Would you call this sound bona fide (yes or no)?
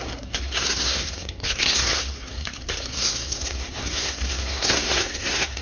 no